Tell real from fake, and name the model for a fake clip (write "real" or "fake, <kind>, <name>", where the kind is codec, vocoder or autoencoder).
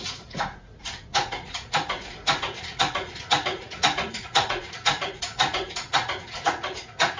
fake, vocoder, Vocos